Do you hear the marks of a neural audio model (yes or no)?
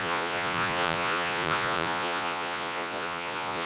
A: yes